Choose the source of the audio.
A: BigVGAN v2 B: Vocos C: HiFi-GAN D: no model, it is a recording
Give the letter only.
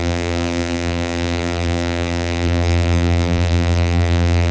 A